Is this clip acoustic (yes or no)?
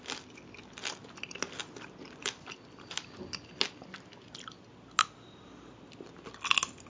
yes